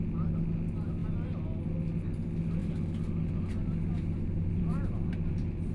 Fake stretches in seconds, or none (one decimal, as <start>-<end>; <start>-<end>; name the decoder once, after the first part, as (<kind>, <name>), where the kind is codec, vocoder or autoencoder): 1.0-1.6 (vocoder, BigVGAN v2); 2.6-5.7